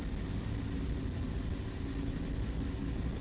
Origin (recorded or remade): recorded